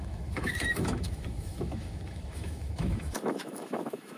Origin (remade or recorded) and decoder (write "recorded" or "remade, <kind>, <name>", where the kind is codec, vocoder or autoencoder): remade, autoencoder, DAC-VAE